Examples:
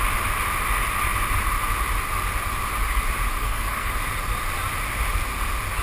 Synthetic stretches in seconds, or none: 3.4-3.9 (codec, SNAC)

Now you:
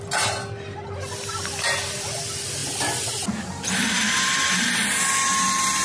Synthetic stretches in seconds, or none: none

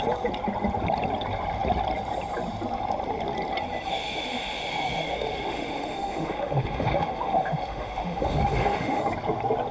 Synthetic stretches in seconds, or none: 3.9-9.0 (autoencoder, DAC-VAE)